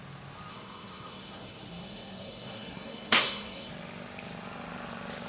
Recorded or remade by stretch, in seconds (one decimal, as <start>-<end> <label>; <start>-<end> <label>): 0.0-0.5 recorded; 0.5-3.7 remade; 3.7-5.3 recorded